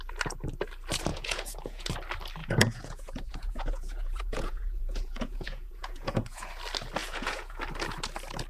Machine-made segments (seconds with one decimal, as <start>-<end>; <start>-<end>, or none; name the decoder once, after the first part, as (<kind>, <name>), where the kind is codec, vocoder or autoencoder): 1.1-1.9 (vocoder, Vocos); 2.4-6.5; 7.0-7.6